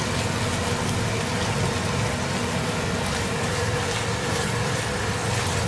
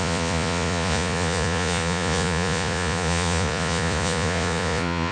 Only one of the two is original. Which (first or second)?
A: first